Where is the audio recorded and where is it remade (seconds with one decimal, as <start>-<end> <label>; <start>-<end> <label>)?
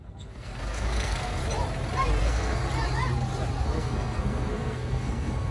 0.0-1.4 remade; 1.4-2.2 recorded; 2.2-2.6 remade; 2.6-3.6 recorded; 3.6-5.5 remade